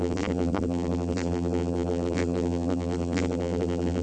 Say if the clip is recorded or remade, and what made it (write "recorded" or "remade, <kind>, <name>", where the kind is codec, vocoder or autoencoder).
remade, vocoder, BigVGAN v2